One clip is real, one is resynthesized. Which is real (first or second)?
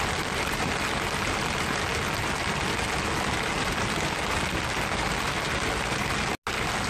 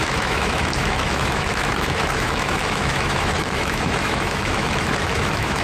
first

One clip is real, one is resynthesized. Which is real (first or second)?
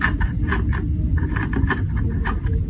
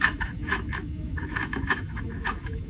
first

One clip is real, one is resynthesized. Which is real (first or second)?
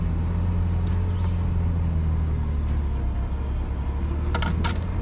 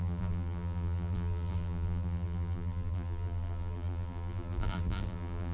first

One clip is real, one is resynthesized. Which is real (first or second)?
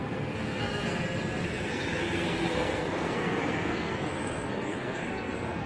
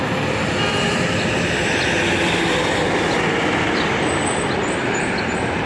second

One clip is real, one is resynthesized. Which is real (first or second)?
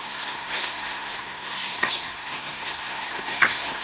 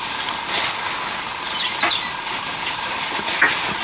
second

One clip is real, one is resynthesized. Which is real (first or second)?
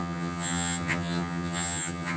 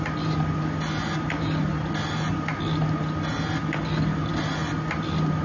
second